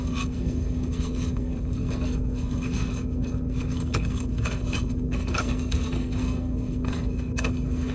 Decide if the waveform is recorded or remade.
remade